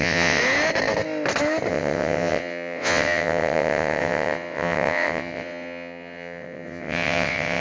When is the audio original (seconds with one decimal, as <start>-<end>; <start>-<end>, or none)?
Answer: 0.4-1.7